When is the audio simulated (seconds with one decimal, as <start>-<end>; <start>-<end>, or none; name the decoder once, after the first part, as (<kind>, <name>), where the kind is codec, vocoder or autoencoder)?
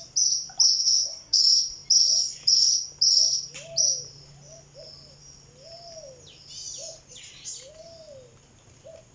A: 0.8-1.4 (codec, SNAC)